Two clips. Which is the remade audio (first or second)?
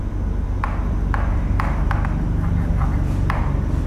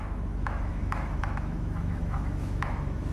second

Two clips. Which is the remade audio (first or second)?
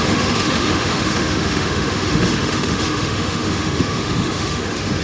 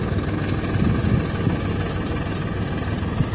first